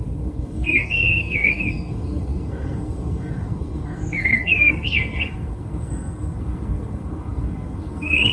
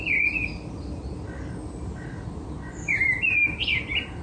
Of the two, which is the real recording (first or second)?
second